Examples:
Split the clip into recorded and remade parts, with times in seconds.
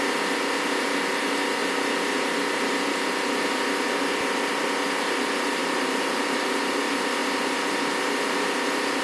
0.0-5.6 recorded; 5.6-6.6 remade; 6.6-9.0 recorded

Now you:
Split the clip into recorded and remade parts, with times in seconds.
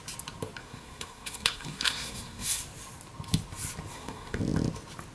0.0-0.6 recorded; 0.6-2.6 remade; 2.6-3.9 recorded; 3.9-4.4 remade; 4.4-5.1 recorded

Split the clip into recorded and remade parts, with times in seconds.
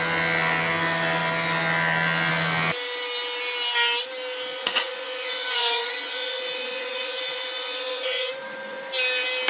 0.0-4.5 recorded; 4.5-8.9 remade; 8.9-9.5 recorded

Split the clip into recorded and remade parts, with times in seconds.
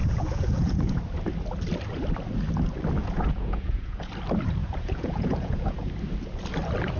0.0-1.0 remade; 1.0-3.0 recorded; 3.0-4.1 remade; 4.1-4.6 recorded; 4.6-5.9 remade; 5.9-7.0 recorded